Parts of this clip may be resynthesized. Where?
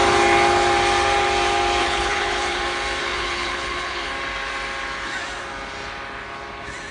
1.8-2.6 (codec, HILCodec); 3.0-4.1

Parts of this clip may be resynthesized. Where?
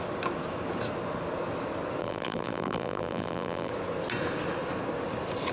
2.0-3.7 (vocoder, BigVGAN v2)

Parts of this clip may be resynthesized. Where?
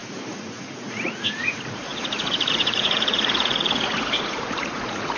0.0-5.2 (vocoder, Vocos)